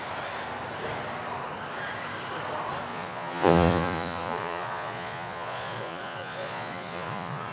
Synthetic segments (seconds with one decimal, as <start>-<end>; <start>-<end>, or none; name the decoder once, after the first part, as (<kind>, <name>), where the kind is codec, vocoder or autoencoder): 2.9-7.5 (vocoder, Vocos)